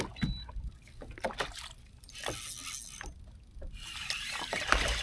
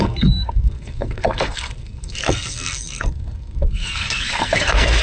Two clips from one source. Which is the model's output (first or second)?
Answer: second